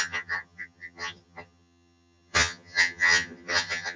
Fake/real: fake